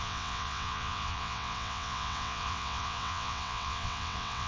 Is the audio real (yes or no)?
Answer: no